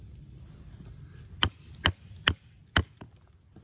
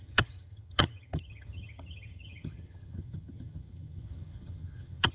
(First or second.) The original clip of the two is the first